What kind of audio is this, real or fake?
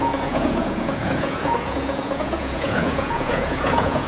fake